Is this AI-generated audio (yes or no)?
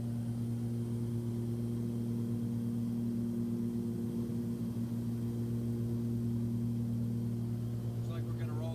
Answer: no